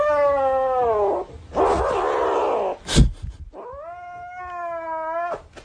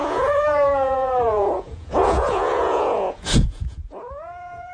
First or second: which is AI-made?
second